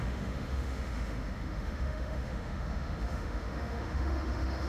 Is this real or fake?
fake